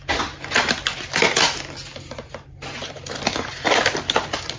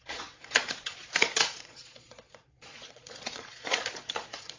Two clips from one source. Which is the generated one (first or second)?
second